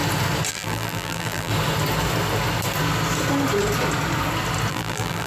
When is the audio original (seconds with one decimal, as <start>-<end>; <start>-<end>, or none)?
0.0-0.5; 1.5-4.7